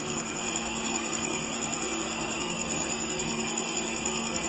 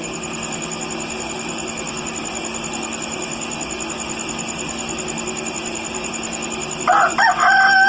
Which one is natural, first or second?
second